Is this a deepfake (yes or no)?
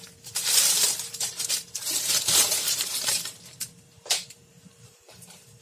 yes